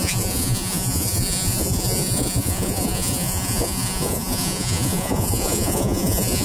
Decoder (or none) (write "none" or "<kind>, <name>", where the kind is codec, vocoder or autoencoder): vocoder, Vocos